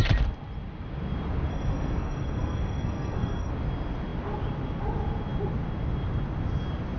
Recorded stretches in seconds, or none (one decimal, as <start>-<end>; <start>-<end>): 0.0-1.5; 3.5-7.0